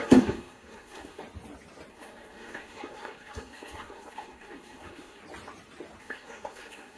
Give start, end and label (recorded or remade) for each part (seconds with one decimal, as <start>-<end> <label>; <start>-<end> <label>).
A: 0.0-1.2 remade; 1.2-1.9 recorded; 1.9-5.2 remade; 5.2-6.0 recorded; 6.0-7.0 remade